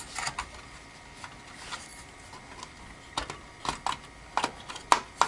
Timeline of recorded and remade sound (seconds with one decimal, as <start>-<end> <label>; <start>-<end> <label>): 0.0-5.3 recorded